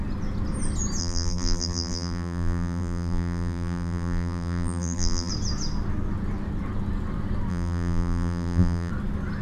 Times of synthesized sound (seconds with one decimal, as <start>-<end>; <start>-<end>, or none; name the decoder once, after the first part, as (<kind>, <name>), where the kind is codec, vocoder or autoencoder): 1.0-5.3 (vocoder, BigVGAN v2); 7.5-8.9